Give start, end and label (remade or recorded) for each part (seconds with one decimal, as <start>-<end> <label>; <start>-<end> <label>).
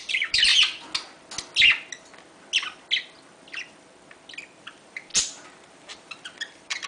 0.0-0.5 remade; 0.5-4.6 recorded; 4.6-5.1 remade; 5.1-5.6 recorded; 5.6-6.9 remade